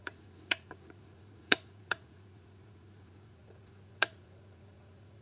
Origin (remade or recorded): remade